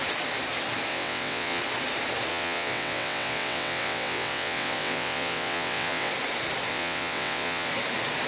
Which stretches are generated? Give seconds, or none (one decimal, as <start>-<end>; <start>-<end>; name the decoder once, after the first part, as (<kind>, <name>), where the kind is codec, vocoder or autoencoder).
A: 0.9-1.6 (vocoder, WaveNeXt); 2.3-6.1; 6.7-7.7